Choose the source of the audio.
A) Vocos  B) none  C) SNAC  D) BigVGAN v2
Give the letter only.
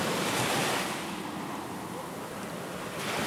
B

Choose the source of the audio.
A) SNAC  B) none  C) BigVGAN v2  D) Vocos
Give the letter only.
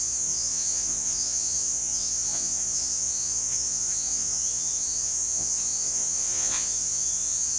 D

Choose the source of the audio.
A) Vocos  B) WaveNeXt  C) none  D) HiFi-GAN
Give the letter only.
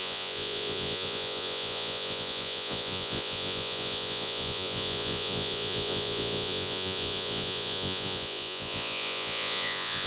A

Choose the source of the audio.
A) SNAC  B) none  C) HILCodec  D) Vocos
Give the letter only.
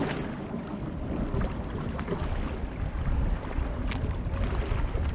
B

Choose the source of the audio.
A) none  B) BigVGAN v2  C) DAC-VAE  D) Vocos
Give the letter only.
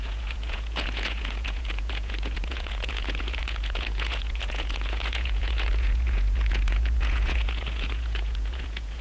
D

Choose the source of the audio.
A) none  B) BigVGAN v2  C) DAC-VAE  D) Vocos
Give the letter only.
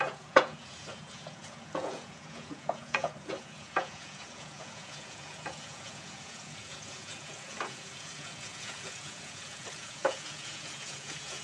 D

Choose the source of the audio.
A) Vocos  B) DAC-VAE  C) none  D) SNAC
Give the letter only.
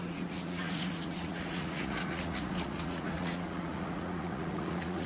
A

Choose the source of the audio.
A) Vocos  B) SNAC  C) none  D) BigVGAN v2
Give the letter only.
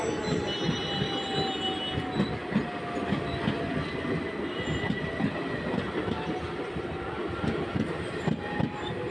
C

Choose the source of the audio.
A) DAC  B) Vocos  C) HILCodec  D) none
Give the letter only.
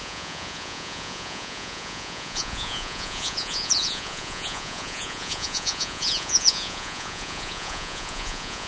B